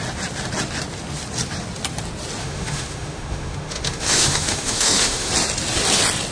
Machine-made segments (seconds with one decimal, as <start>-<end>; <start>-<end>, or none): 2.4-5.3